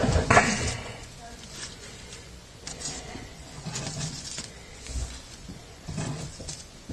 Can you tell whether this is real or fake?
fake